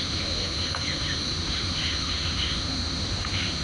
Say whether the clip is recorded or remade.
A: remade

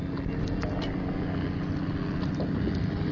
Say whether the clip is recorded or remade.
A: recorded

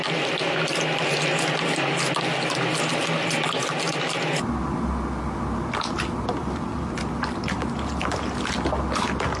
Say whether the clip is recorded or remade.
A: recorded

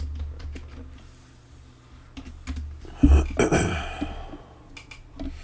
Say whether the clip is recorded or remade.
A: recorded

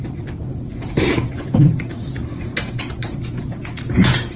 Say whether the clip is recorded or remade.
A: remade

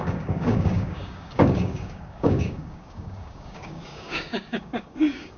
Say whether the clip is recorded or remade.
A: remade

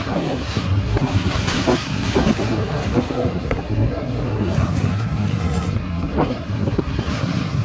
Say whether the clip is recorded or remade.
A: remade